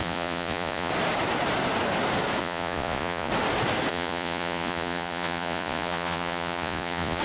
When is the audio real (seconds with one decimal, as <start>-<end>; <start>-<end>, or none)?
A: 0.9-2.4; 3.3-3.9